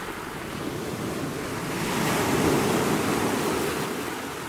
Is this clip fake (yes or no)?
no